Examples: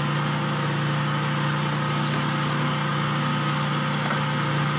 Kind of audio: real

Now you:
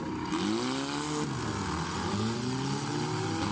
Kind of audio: real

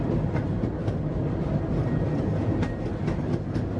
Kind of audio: real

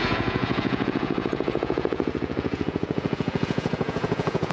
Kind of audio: fake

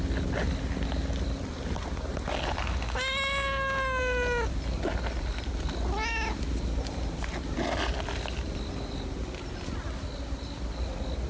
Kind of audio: real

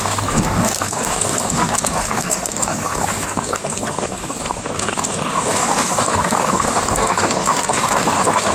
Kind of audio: fake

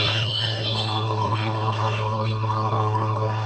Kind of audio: fake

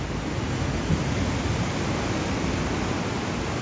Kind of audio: real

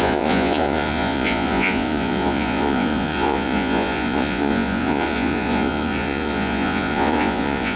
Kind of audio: fake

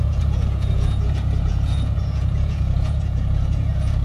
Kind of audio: fake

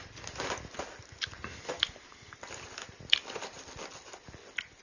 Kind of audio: real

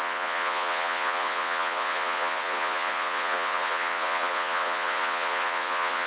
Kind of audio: fake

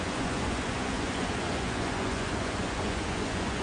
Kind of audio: fake